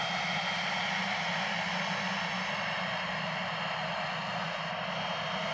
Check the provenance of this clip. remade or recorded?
recorded